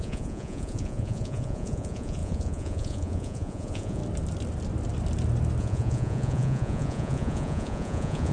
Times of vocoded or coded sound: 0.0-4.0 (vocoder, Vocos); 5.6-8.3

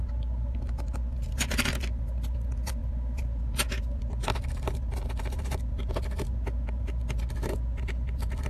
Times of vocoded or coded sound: none

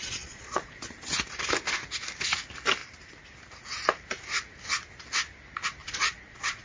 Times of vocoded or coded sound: 0.0-0.8 (vocoder, Vocos); 5.8-6.6

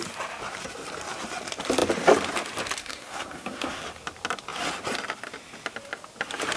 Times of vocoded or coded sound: 2.8-3.8 (codec, SNAC)

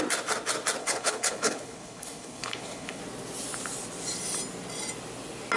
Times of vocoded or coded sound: 0.8-3.0 (codec, HILCodec)

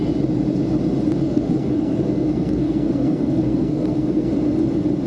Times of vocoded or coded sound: 1.2-4.3 (codec, SNAC)

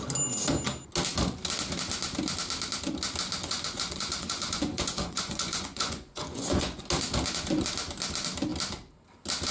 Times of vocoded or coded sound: 3.4-6.8 (vocoder, Vocos)

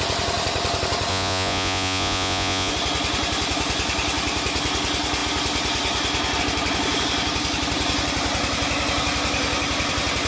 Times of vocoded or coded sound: 1.1-2.7 (vocoder, Vocos)